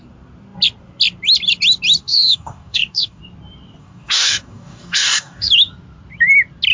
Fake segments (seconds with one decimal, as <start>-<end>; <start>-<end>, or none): 2.0-3.2; 3.8-5.5